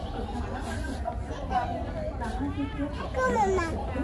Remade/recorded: recorded